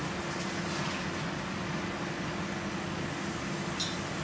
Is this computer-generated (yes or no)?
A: no